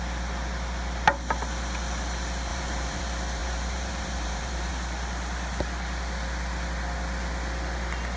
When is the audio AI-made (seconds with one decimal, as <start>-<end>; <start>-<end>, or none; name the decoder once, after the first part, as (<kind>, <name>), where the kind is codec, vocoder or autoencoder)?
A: 2.5-3.0 (vocoder, BigVGAN v2); 3.4-4.7